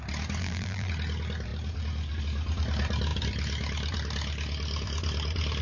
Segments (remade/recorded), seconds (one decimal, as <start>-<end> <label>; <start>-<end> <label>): 0.0-0.4 recorded; 0.4-0.9 remade; 0.9-5.6 recorded